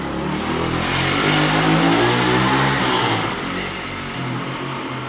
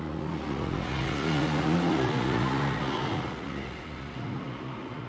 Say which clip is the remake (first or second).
second